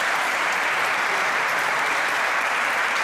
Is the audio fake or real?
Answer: fake